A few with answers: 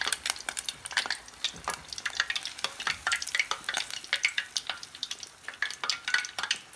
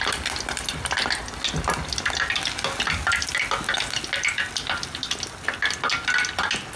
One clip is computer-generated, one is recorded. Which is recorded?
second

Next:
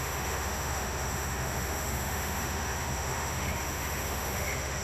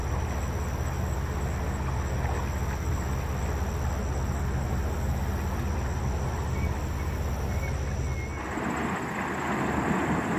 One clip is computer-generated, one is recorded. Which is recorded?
second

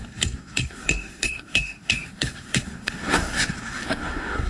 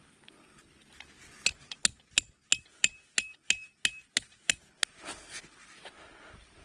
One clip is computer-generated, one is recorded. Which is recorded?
second